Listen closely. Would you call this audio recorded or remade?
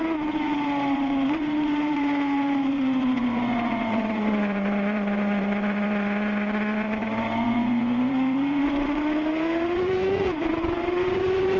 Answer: remade